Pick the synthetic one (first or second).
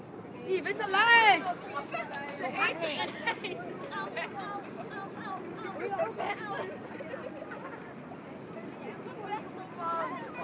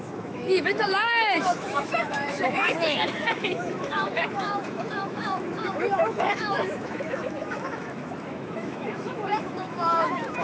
second